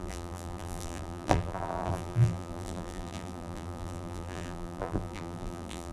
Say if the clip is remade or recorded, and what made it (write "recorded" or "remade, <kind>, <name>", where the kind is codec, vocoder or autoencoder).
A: remade, vocoder, BigVGAN v2